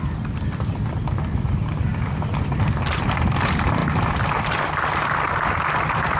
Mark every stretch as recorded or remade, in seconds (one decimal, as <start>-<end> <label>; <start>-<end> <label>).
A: 0.0-1.9 recorded; 1.9-3.3 remade; 3.3-3.8 recorded; 3.8-6.2 remade